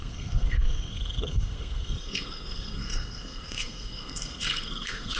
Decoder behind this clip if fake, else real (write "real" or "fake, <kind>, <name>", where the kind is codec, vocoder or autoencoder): fake, codec, SNAC